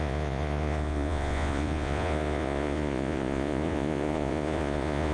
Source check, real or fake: fake